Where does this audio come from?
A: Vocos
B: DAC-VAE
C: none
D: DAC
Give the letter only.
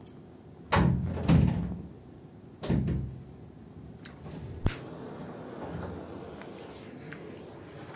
C